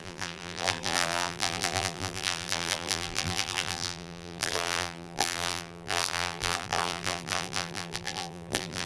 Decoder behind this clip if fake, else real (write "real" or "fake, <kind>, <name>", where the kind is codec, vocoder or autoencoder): fake, vocoder, BigVGAN v2